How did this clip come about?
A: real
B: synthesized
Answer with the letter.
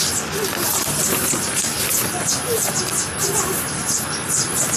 B